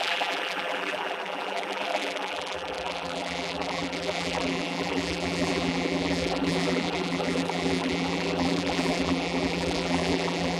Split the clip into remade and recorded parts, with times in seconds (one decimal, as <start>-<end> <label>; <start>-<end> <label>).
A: 0.0-10.6 remade